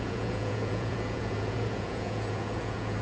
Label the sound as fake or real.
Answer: fake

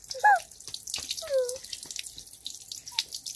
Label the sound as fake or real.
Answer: real